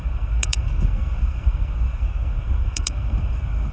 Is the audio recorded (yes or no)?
no